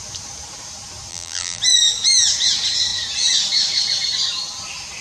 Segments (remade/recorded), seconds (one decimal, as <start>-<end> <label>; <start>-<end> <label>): 0.0-1.1 recorded; 1.1-1.6 remade; 1.6-5.0 recorded